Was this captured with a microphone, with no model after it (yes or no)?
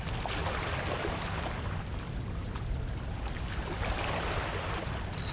yes